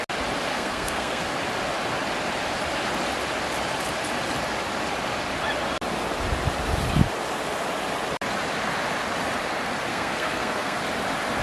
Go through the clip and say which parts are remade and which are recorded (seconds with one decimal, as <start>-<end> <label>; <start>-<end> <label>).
0.0-0.5 recorded; 0.5-1.2 remade; 1.2-9.9 recorded; 9.9-10.8 remade; 10.8-11.4 recorded